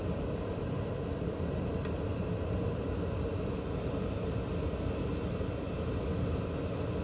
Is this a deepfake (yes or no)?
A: no